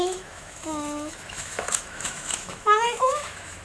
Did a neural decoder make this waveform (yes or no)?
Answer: yes